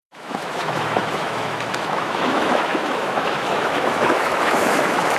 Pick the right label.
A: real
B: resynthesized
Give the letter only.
B